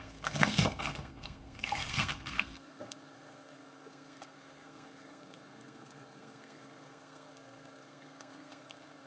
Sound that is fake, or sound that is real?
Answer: fake